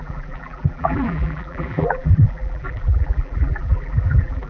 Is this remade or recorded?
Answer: remade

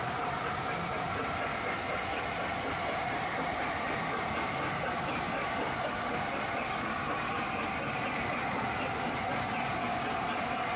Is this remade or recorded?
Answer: recorded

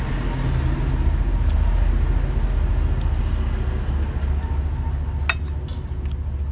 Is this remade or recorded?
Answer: recorded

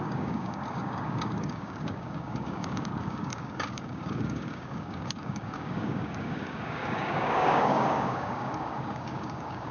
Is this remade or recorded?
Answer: remade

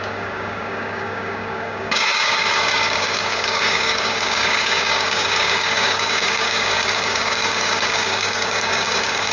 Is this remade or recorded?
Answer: remade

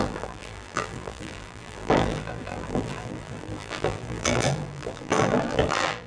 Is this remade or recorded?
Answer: remade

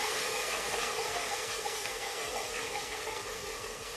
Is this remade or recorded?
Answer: remade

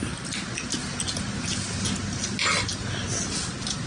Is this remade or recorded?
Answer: recorded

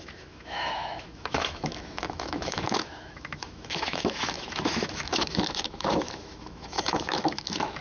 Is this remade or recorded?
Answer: remade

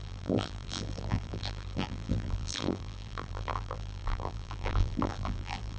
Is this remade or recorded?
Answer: remade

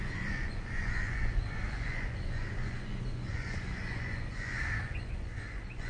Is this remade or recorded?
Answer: remade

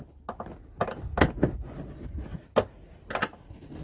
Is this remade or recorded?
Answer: recorded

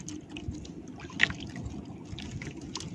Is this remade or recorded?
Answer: recorded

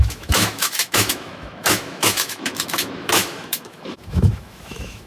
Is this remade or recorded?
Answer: remade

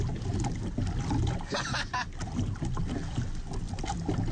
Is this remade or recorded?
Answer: recorded